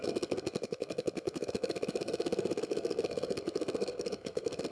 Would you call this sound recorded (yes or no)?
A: no